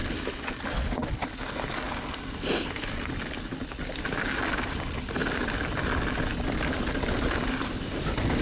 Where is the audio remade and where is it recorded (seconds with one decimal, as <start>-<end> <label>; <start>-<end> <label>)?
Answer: 0.0-8.4 recorded